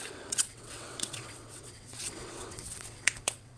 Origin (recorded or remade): remade